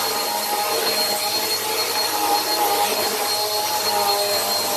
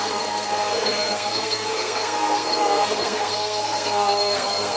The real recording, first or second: first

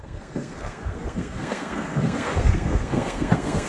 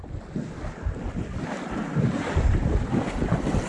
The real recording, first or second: second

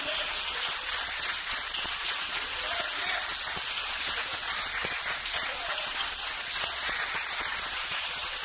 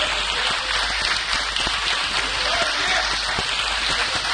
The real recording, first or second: second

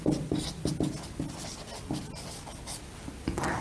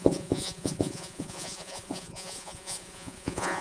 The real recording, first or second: first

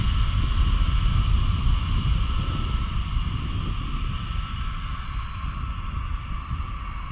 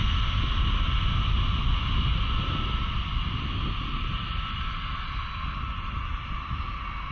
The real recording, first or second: second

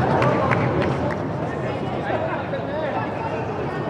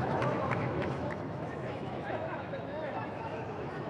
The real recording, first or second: first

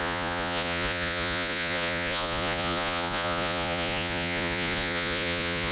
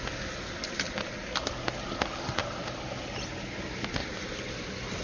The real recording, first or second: second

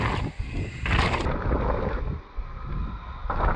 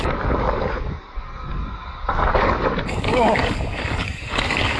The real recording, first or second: first